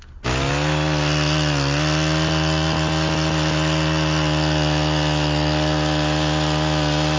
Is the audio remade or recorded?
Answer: recorded